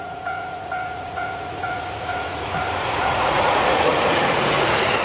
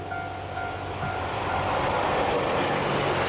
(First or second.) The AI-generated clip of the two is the first